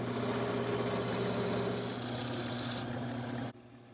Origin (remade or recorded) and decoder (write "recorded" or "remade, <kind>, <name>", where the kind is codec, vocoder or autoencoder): recorded